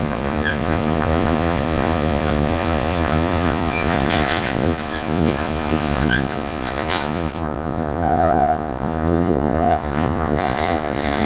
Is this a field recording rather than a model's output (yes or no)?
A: no